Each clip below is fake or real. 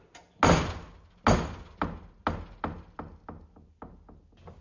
real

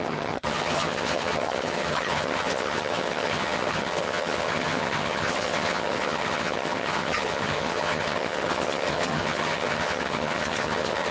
fake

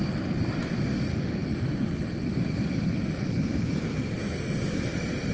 real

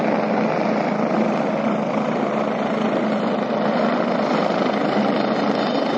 real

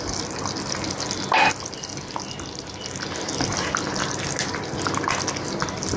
real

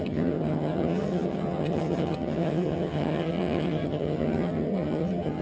fake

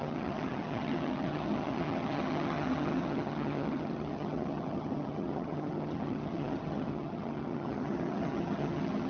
fake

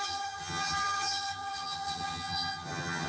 fake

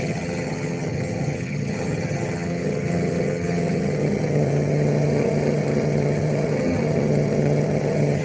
fake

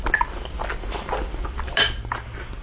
real